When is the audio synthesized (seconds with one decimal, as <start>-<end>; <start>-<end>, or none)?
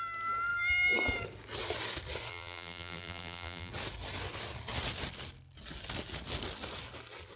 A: 2.3-3.7